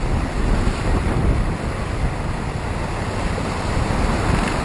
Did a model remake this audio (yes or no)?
no